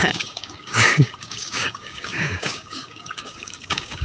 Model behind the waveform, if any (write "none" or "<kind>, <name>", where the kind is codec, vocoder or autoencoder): codec, DAC